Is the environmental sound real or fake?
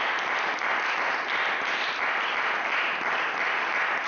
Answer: real